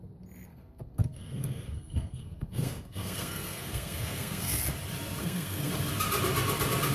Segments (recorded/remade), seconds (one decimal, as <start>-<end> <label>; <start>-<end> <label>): 0.0-0.5 recorded; 0.5-4.6 remade; 4.6-5.2 recorded; 5.2-5.7 remade; 5.7-6.9 recorded